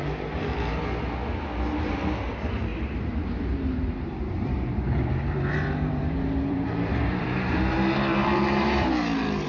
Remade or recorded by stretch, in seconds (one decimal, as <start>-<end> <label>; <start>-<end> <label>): 0.0-2.7 recorded; 2.7-7.6 remade; 7.6-8.2 recorded; 8.2-8.9 remade; 8.9-9.5 recorded